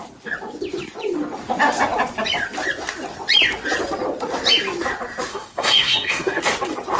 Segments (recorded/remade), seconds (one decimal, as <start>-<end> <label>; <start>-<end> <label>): 0.0-5.3 recorded; 5.3-6.4 remade; 6.4-7.0 recorded